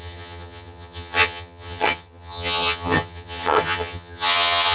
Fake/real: fake